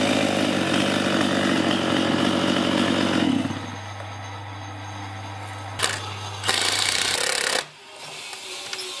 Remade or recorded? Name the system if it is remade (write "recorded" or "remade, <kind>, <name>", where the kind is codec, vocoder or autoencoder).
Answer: recorded